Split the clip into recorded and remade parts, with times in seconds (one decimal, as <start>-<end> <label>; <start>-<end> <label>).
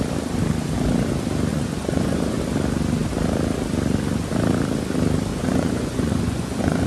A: 0.0-1.5 recorded; 1.5-2.4 remade; 2.4-5.3 recorded; 5.3-6.9 remade